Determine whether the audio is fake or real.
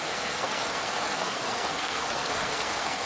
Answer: fake